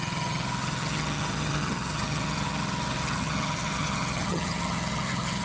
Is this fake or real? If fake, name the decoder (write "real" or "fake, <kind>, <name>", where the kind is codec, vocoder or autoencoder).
fake, vocoder, HiFi-GAN